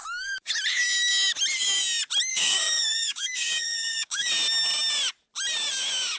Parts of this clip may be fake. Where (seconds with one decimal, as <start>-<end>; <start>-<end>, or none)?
0.0-0.5; 2.3-4.3